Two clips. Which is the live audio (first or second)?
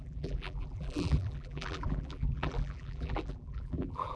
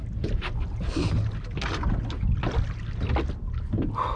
second